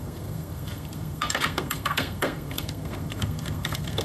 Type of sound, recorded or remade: remade